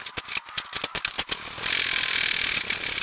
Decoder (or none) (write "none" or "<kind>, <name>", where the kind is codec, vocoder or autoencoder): none